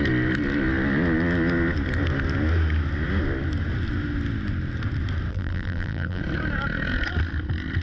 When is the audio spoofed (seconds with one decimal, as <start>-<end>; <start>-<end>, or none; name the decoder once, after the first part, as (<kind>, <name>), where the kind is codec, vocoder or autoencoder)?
5.3-6.2 (vocoder, BigVGAN v2)